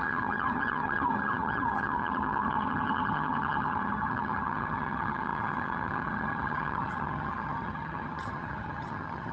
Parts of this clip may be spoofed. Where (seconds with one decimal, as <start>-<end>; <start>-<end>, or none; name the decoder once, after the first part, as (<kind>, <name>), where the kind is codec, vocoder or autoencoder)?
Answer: 0.0-9.3 (vocoder, HiFi-GAN)